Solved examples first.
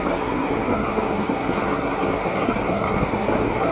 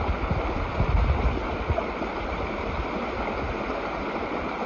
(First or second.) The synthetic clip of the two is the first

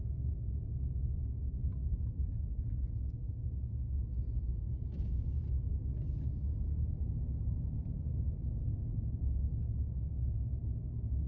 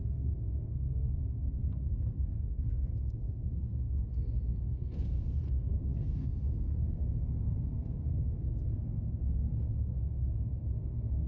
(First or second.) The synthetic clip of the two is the second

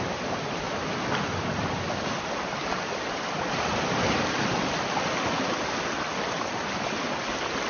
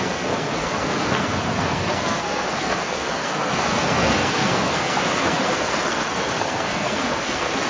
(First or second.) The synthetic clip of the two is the second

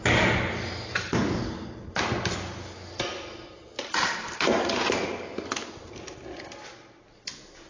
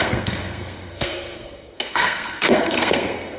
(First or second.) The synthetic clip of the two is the second